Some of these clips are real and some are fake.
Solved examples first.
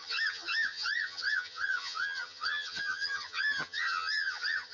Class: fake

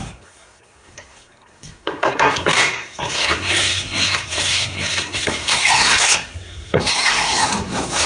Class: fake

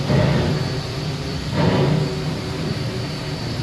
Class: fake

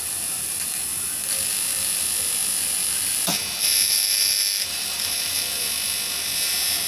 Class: fake